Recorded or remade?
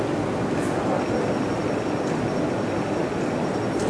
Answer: recorded